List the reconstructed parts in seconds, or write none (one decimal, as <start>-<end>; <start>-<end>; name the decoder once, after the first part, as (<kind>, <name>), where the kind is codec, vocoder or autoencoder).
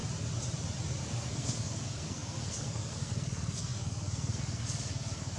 1.0-5.4 (codec, SNAC)